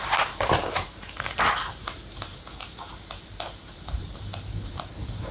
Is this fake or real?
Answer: fake